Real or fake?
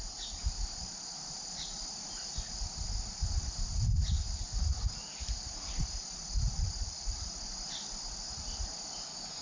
real